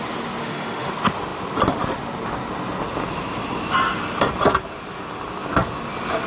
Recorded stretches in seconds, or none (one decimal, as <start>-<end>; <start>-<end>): 0.0-0.4; 0.9-6.3